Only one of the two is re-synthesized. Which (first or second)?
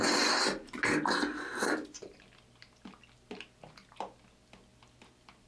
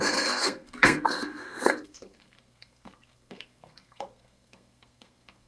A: second